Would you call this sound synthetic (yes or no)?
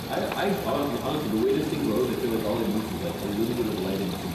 no